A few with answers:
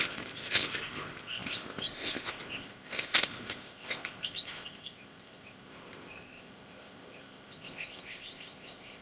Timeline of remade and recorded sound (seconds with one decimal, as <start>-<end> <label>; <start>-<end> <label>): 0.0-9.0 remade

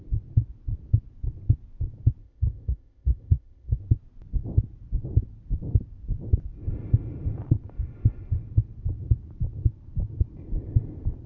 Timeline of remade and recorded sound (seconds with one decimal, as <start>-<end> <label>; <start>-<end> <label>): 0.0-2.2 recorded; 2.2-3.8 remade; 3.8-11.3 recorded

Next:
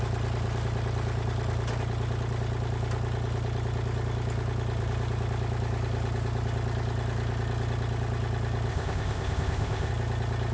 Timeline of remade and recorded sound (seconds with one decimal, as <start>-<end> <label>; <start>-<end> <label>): 0.0-8.7 recorded; 8.7-9.9 remade; 9.9-10.5 recorded

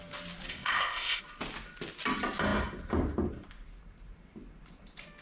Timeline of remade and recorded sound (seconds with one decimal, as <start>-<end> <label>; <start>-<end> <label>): 0.0-0.5 recorded; 0.5-1.2 remade; 1.2-5.2 recorded